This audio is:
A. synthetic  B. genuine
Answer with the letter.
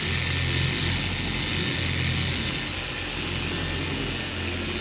B